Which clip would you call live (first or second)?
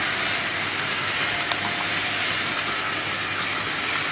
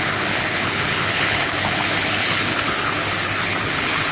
first